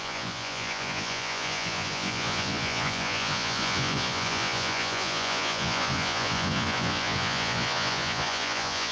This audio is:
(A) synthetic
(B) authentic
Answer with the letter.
A